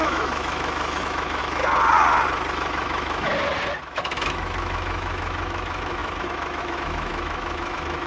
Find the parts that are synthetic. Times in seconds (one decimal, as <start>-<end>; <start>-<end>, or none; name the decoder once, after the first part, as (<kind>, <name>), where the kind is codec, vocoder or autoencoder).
0.0-1.6 (autoencoder, DAC-VAE); 2.5-3.3; 3.8-8.1